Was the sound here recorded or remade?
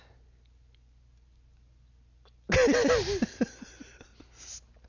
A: recorded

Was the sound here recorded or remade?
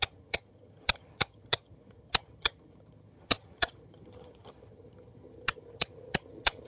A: remade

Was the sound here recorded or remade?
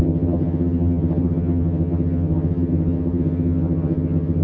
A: remade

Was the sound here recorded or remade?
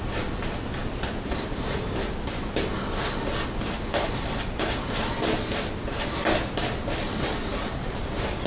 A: recorded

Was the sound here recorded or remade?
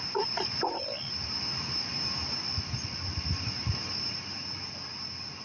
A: recorded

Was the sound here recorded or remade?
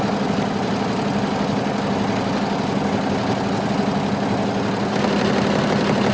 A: recorded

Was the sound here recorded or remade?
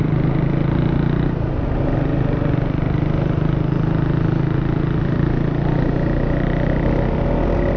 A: recorded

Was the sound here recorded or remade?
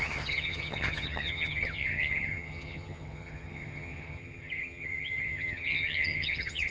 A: remade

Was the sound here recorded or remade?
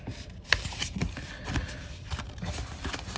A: recorded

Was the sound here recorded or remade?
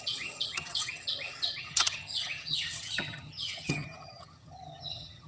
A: remade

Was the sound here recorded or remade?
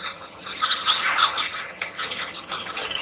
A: remade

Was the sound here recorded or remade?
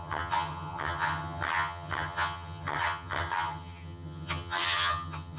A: remade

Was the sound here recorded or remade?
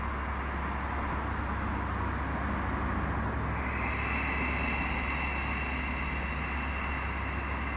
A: recorded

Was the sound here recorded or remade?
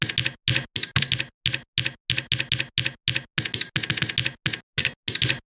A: recorded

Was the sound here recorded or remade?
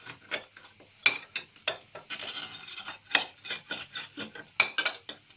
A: recorded